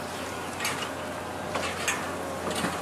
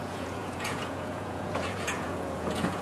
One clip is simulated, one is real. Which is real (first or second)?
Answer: first